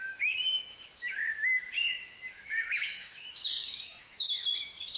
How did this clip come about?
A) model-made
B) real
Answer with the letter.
A